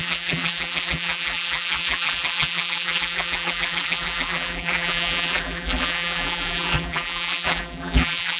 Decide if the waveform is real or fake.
fake